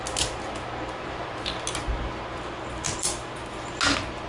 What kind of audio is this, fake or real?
real